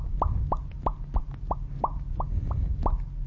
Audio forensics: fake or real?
real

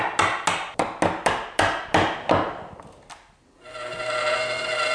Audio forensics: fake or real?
real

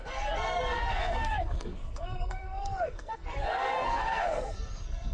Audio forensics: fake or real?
fake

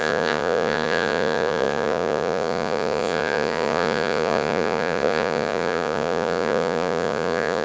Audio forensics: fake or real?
fake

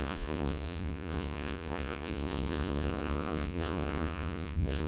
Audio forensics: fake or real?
fake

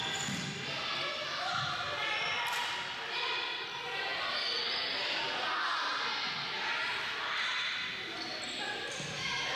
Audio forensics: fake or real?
real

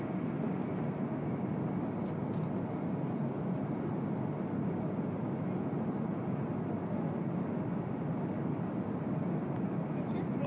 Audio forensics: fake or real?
real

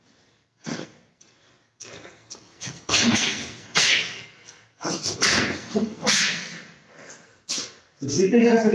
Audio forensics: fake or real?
fake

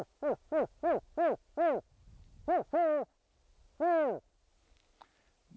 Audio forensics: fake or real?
real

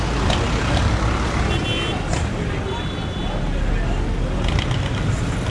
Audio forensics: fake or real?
real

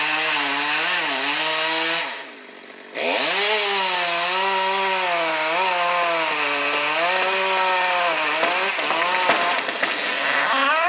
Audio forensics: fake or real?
real